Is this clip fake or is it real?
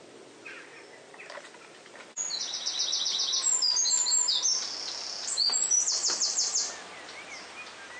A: real